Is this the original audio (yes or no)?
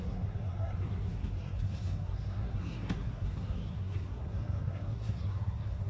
no